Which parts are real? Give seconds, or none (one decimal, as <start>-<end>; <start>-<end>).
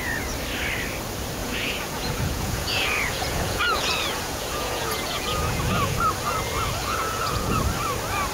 0.0-1.4; 6.0-6.8; 7.6-8.3